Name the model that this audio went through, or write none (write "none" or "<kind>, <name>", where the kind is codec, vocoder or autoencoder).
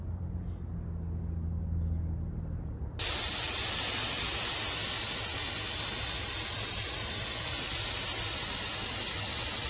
none